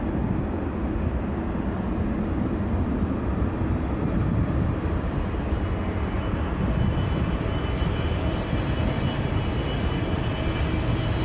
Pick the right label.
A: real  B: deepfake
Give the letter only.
A